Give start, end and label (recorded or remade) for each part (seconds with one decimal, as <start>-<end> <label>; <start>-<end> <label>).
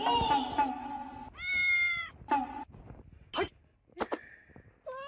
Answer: 0.0-5.1 recorded